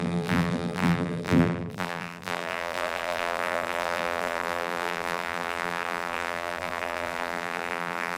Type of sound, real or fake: fake